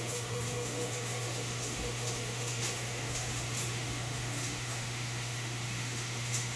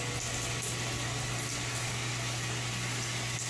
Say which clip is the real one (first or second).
second